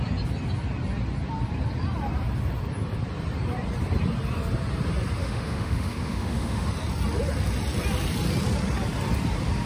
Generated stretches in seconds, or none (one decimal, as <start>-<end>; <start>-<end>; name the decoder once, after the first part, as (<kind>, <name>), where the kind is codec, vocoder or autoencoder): 5.2-6.7 (autoencoder, DAC-VAE)